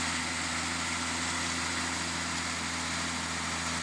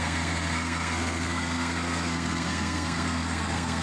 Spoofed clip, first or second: second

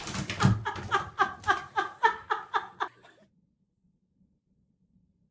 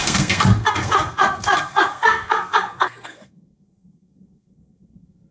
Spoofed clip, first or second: second